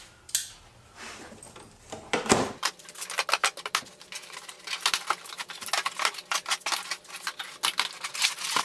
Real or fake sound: real